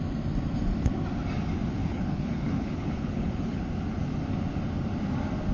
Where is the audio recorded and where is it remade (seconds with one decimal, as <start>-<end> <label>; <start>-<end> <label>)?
0.0-1.8 recorded; 1.8-3.6 remade; 3.6-5.5 recorded